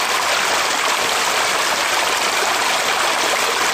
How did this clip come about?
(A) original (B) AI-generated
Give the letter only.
A